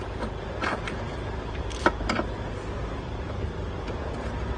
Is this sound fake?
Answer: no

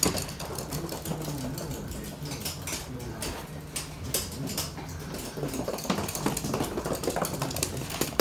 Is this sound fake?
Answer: no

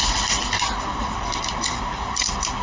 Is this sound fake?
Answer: yes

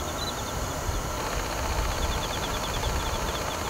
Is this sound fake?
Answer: no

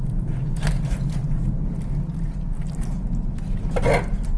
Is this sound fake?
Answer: no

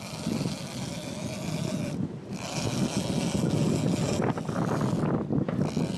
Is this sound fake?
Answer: no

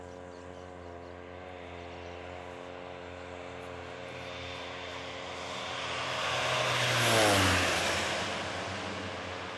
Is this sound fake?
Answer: no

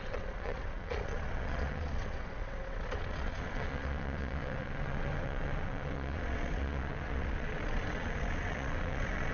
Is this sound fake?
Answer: yes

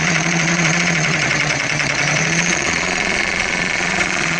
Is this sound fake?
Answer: yes